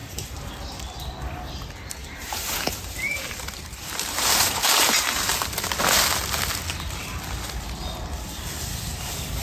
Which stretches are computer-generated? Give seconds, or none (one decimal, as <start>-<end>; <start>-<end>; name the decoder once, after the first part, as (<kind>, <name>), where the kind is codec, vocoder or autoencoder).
0.0-0.5 (vocoder, BigVGAN v2); 2.0-5.0